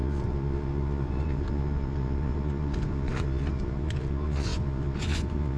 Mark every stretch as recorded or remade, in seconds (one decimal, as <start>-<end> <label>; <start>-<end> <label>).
0.0-5.6 remade

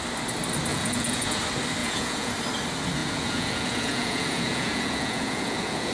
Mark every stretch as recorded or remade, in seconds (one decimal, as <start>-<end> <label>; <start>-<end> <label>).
0.0-0.7 recorded; 0.7-1.4 remade; 1.4-1.8 recorded; 1.8-2.3 remade; 2.3-3.0 recorded; 3.0-5.9 remade